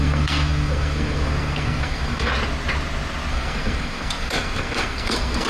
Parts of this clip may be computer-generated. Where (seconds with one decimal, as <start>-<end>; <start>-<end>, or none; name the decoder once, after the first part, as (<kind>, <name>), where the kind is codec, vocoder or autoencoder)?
0.0-2.3 (codec, SNAC); 3.3-5.5